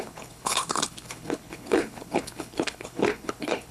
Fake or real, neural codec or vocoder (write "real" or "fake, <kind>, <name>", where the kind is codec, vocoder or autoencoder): fake, codec, HILCodec